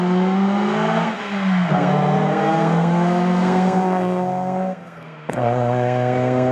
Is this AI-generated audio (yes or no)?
yes